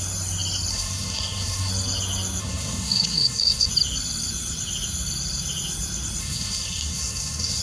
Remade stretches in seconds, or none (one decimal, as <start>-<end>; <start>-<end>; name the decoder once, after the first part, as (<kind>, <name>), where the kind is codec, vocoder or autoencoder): 0.7-1.7 (codec, SNAC); 2.4-3.7; 6.2-7.6